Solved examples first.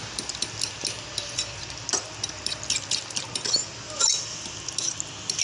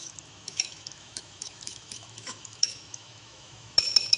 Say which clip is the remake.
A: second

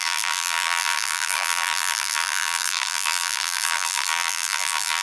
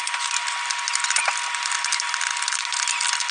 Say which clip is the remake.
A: first